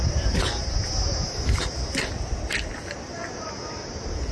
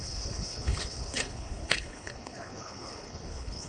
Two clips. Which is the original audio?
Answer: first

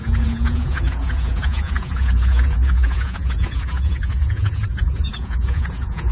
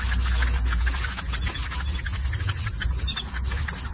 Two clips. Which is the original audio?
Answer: second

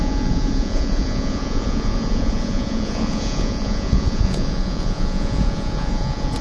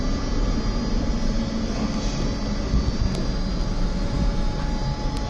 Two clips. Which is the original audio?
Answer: second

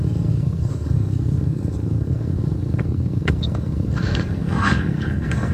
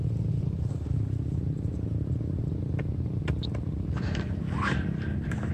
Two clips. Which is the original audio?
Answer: second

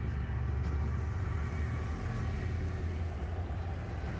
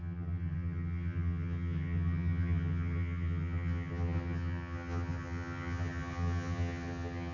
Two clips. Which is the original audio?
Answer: first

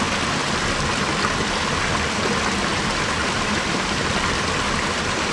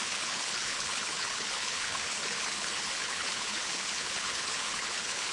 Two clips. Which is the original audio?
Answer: first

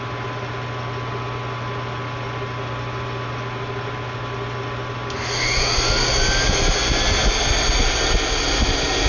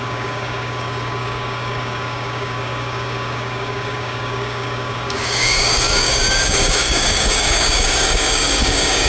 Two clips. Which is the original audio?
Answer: first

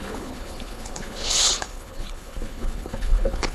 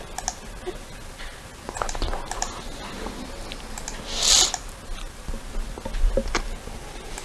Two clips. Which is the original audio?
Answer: second